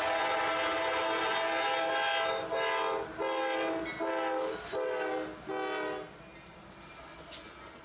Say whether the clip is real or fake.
real